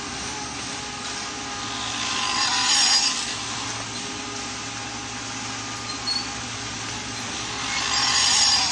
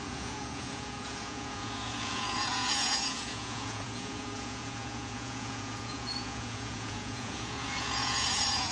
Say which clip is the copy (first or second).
second